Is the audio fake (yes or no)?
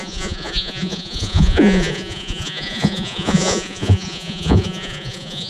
yes